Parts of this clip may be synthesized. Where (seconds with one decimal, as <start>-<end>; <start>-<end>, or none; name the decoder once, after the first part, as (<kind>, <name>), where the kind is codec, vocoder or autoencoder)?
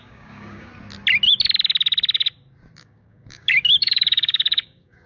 0.0-0.7 (codec, DAC); 2.8-5.1